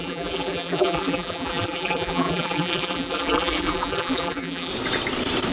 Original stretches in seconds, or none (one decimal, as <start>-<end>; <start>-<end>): 4.7-5.5